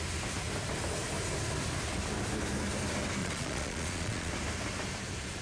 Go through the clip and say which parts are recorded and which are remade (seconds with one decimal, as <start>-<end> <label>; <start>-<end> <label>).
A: 0.0-3.2 recorded; 3.2-4.3 remade; 4.3-5.4 recorded